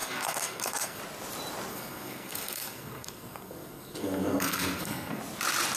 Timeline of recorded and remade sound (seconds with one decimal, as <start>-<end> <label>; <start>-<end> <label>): 0.0-1.0 remade; 1.0-1.7 recorded; 1.7-5.2 remade; 5.2-5.8 recorded